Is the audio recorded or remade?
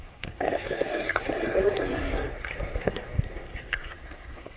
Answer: remade